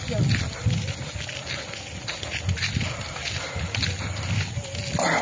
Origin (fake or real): real